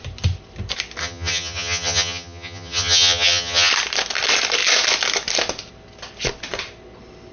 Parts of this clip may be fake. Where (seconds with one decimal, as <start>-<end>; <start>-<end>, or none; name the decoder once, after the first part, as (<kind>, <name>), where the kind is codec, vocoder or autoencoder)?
1.0-3.7 (vocoder, HiFi-GAN)